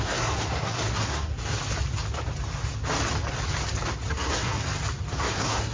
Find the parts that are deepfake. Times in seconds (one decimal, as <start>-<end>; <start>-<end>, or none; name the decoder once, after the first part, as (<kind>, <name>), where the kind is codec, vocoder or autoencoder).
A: 0.0-1.3 (codec, SNAC); 4.1-4.6; 5.2-5.7